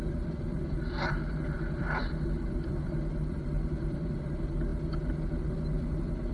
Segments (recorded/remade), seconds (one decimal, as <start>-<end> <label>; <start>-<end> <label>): 0.0-6.3 remade